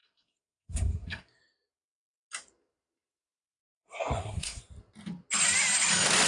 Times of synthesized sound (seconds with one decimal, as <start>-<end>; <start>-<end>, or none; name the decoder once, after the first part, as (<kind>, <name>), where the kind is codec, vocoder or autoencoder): 0.0-1.4 (codec, SNAC); 3.7-4.6